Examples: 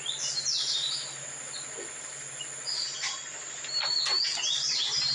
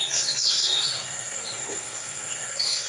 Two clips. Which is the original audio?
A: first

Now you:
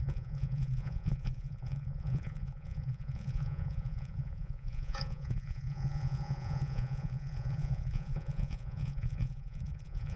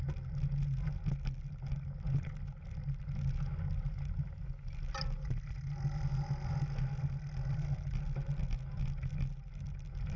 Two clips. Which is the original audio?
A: second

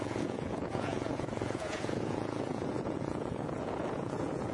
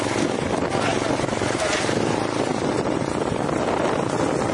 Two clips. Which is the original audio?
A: second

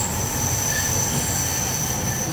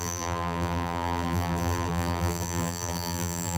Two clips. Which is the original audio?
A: first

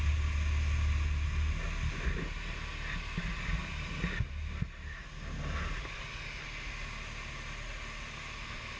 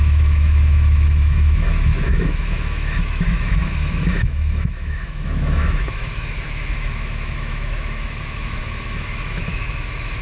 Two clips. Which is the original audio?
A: first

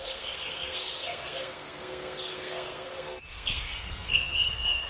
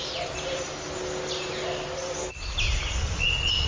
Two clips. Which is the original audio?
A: second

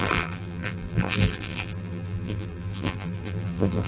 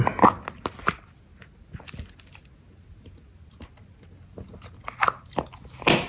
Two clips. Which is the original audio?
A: second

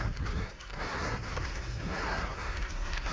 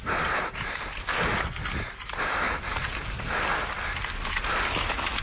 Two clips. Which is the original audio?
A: second